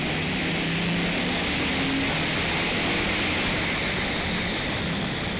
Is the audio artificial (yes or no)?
no